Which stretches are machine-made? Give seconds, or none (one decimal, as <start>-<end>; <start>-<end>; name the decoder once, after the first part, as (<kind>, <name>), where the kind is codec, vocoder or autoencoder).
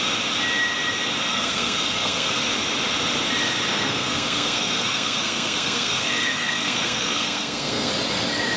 1.3-2.3 (codec, SNAC); 3.7-7.9